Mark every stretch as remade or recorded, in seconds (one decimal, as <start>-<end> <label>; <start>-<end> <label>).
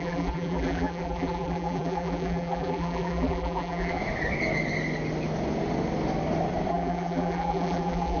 0.0-4.0 remade; 4.0-6.7 recorded; 6.7-8.2 remade